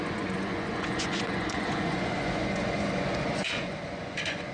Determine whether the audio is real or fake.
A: fake